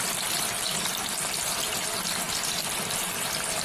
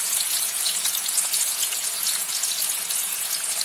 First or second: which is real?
first